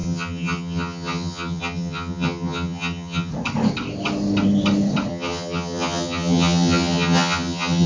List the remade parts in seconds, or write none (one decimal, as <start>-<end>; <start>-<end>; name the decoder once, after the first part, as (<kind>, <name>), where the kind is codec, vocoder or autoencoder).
0.0-3.3 (vocoder, HiFi-GAN); 5.1-7.9